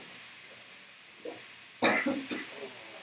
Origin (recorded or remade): recorded